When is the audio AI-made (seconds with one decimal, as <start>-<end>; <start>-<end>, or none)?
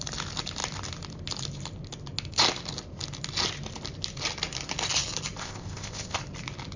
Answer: 5.4-6.2